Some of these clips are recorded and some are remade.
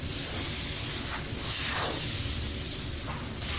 recorded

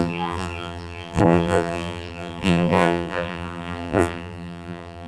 remade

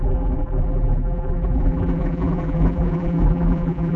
remade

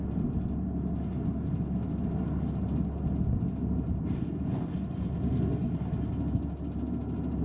recorded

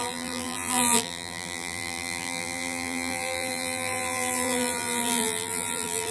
remade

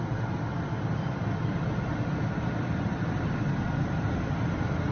recorded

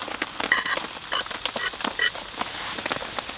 recorded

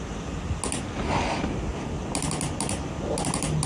recorded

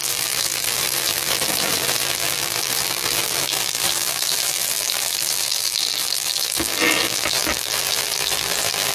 remade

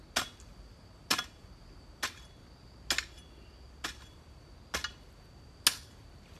recorded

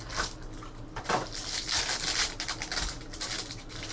recorded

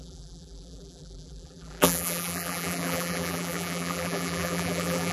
remade